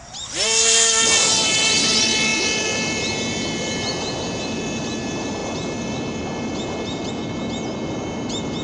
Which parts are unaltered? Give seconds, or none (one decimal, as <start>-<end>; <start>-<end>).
0.0-8.6